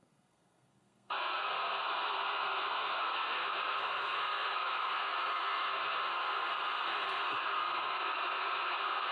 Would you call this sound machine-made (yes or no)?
yes